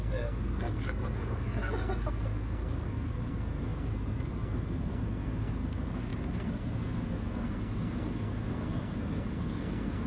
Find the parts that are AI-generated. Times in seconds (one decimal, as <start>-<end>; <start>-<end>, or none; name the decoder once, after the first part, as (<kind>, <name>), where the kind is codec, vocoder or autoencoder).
0.0-10.1 (codec, SNAC)